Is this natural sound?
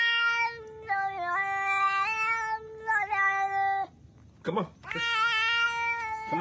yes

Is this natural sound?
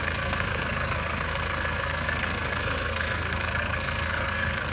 no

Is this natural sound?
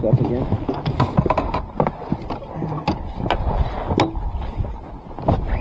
yes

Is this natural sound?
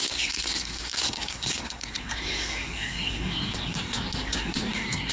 no